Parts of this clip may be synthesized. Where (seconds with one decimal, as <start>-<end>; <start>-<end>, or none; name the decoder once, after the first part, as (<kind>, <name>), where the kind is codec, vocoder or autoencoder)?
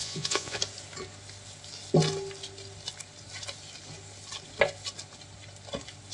0.0-0.6 (vocoder, Vocos)